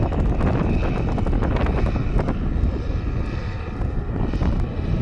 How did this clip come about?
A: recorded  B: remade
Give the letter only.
A